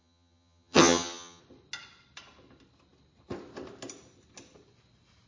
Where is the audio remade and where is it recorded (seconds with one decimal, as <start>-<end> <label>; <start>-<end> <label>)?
0.0-1.4 remade; 1.4-5.3 recorded